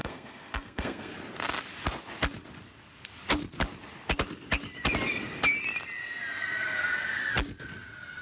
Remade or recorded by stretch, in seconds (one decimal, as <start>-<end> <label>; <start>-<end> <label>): 0.0-1.1 remade; 1.1-8.2 recorded